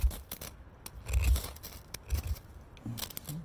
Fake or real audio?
real